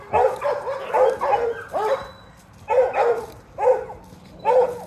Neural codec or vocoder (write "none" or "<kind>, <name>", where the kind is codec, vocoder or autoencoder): none